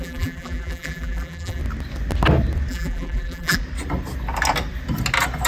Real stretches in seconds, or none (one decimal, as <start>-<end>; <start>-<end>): 1.6-2.7; 3.6-5.5